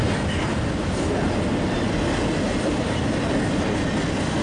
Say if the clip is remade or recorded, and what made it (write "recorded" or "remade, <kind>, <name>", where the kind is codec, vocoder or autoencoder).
recorded